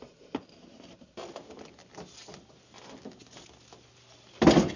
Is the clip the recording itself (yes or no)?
yes